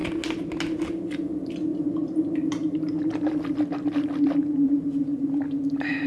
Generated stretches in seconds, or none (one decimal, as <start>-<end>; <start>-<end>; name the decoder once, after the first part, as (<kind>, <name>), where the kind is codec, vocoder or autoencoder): 1.7-5.4 (vocoder, BigVGAN v2)